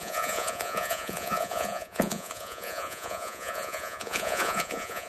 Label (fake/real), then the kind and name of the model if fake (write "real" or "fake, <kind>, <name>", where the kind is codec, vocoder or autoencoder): fake, vocoder, Vocos